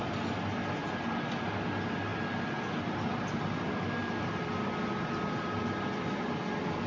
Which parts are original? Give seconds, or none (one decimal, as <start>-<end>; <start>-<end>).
0.0-6.9